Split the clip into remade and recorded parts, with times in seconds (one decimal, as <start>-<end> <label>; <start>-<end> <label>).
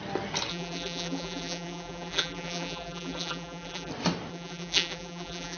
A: 0.0-0.5 recorded; 0.5-3.9 remade; 3.9-4.3 recorded; 4.3-5.6 remade